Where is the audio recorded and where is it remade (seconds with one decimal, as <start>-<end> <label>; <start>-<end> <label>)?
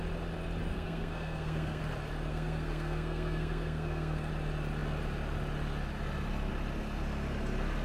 0.0-0.7 recorded; 0.7-1.8 remade; 1.8-2.3 recorded; 2.3-4.3 remade; 4.3-7.8 recorded